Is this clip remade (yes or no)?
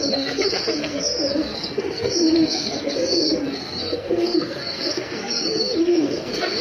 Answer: yes